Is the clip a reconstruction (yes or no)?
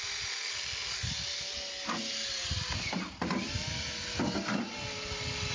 no